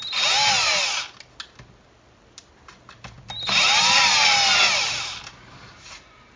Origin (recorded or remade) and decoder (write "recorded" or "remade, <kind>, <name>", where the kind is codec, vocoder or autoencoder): recorded